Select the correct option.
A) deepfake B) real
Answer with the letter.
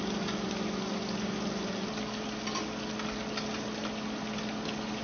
B